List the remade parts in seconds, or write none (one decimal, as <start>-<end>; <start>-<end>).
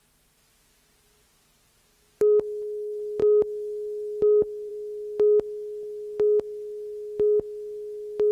none